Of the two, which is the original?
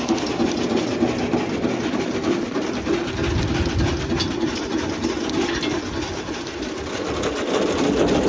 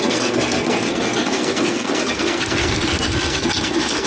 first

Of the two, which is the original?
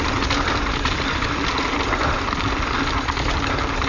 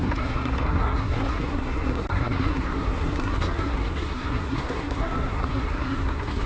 first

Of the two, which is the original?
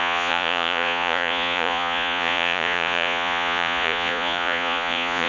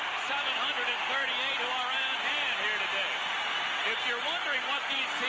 second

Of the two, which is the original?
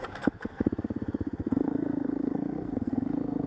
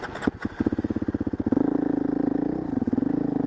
second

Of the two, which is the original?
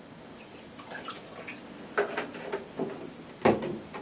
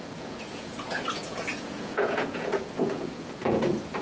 first